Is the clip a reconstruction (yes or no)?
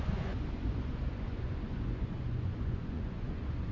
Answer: yes